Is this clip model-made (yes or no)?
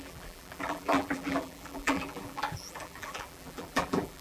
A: yes